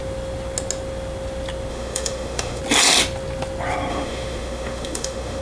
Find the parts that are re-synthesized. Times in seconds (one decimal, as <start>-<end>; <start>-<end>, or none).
1.7-2.6; 3.9-5.4